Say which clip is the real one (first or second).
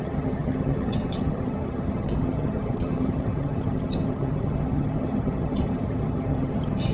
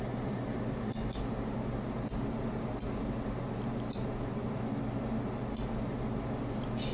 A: second